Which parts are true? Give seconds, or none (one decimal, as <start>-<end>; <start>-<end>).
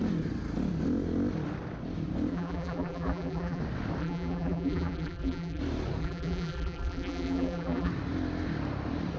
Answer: 0.0-2.3; 3.6-4.0; 5.6-6.0; 7.9-9.2